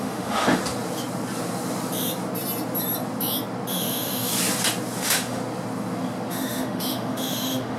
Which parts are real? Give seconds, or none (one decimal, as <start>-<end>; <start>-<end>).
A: 0.6-3.7; 4.3-5.0; 5.4-6.3